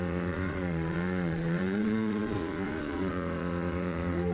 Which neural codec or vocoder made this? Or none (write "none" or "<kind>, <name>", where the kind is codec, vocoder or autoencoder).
vocoder, Vocos